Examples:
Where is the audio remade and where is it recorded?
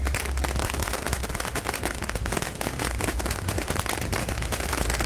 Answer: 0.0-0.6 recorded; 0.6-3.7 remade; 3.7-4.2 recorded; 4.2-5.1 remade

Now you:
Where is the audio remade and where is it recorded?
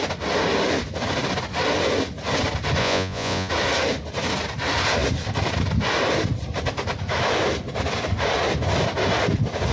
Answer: 0.0-2.8 recorded; 2.8-3.5 remade; 3.5-9.7 recorded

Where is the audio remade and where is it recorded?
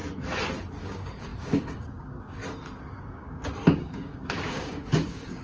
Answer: 0.0-0.8 recorded; 0.8-2.4 remade; 2.4-3.0 recorded; 3.0-5.4 remade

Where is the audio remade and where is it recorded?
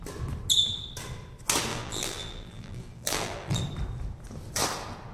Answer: 0.0-1.7 recorded; 1.7-3.6 remade; 3.6-5.1 recorded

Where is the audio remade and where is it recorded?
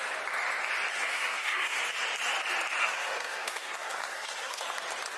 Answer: 0.0-0.9 recorded; 0.9-1.8 remade; 1.8-2.8 recorded; 2.8-4.6 remade; 4.6-5.2 recorded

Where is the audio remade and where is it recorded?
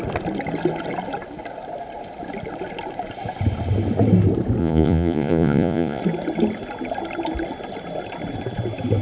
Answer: 0.0-4.6 recorded; 4.6-6.0 remade; 6.0-9.0 recorded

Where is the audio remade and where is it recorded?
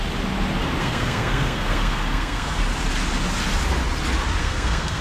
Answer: 0.0-0.8 recorded; 0.8-2.6 remade; 2.6-4.4 recorded; 4.4-5.0 remade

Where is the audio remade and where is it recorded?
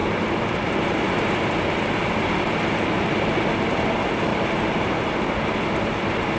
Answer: 0.0-3.3 remade; 3.3-4.3 recorded; 4.3-5.2 remade; 5.2-6.4 recorded